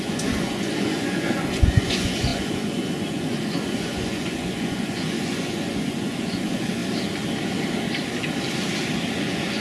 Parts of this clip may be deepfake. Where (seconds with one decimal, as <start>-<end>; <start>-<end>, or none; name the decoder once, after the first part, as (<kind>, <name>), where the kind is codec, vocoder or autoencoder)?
0.0-6.8 (vocoder, Vocos); 9.1-9.6